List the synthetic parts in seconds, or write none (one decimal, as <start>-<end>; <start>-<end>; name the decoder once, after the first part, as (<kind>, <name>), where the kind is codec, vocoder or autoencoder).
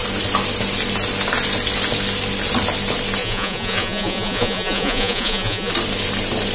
3.2-5.7 (vocoder, Vocos)